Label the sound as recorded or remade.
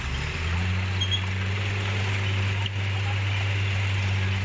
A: recorded